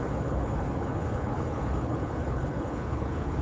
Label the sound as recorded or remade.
remade